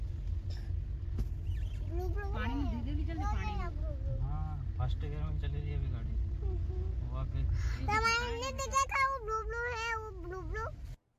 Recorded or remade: recorded